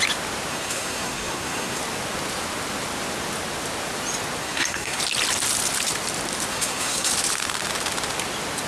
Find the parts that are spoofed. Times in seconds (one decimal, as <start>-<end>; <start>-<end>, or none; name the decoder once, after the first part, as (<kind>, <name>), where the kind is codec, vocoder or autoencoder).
0.5-1.8 (codec, SNAC); 4.4-5.0; 6.5-7.1